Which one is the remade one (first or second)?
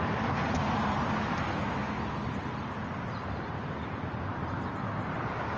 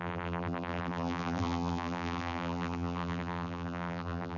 second